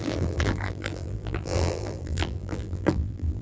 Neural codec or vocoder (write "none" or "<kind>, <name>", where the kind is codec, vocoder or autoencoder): vocoder, BigVGAN v2